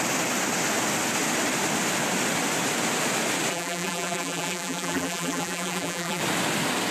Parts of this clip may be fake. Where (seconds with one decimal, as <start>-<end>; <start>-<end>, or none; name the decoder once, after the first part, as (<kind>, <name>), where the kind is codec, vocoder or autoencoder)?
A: 3.5-6.2 (vocoder, BigVGAN v2)